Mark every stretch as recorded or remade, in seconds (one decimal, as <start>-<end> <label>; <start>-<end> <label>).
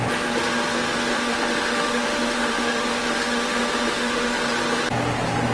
0.0-1.1 recorded; 1.1-4.4 remade; 4.4-5.5 recorded